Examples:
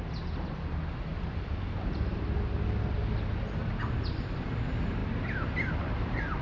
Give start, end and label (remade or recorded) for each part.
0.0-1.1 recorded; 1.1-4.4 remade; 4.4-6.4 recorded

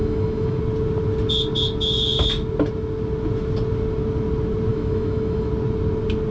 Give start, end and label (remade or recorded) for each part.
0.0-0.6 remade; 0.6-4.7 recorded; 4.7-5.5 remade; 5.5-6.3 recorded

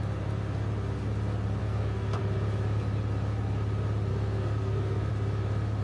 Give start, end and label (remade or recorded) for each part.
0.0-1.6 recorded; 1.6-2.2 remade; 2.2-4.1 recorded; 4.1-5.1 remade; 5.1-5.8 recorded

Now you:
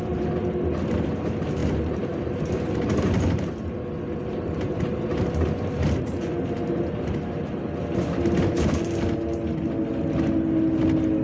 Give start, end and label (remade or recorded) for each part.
0.0-11.2 recorded

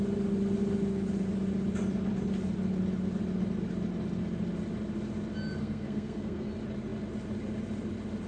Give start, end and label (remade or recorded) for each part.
0.0-5.6 recorded; 5.6-6.5 remade; 6.5-8.3 recorded

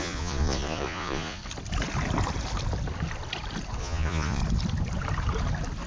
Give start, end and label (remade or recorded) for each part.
0.0-1.4 remade; 1.4-3.8 recorded; 3.8-4.4 remade; 4.4-5.9 recorded